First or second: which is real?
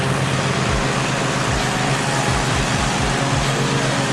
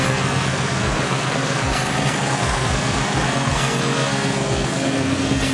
first